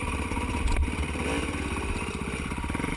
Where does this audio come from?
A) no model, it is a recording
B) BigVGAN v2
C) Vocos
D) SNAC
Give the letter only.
B